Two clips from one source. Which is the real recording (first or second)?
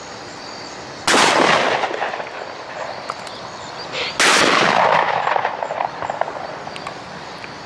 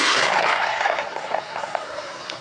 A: first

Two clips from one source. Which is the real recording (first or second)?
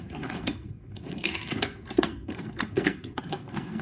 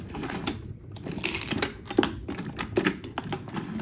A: second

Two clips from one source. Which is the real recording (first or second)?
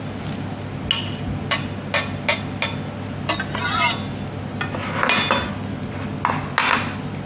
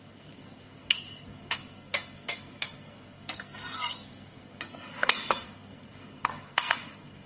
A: first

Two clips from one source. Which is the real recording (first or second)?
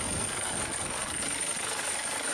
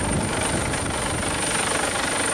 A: second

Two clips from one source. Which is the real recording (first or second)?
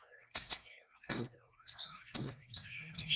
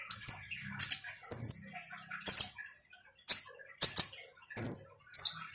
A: second